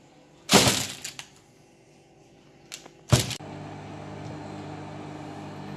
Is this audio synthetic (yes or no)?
no